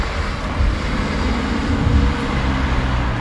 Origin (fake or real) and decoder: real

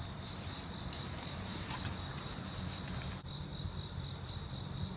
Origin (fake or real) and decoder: real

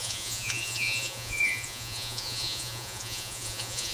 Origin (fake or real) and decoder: fake, vocoder, Vocos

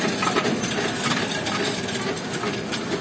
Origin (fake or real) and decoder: real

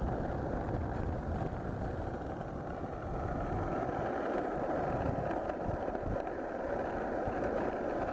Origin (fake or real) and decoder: fake, vocoder, BigVGAN v2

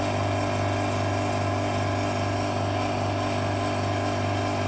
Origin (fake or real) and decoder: real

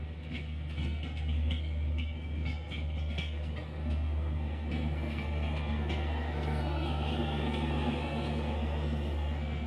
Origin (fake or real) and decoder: fake, codec, SNAC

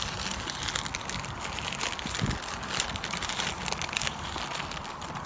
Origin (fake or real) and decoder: real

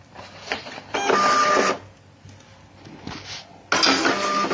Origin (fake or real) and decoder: real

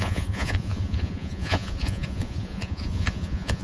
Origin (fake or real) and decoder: fake, vocoder, Vocos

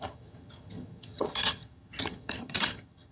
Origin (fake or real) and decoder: fake, vocoder, HiFi-GAN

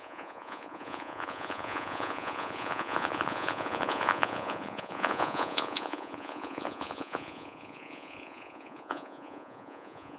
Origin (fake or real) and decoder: fake, vocoder, Vocos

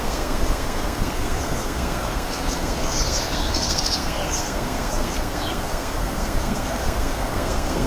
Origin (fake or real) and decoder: fake, codec, SNAC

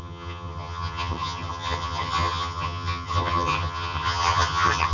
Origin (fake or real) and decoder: fake, vocoder, HiFi-GAN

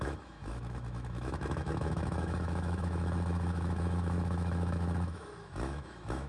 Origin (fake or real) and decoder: fake, autoencoder, DAC-VAE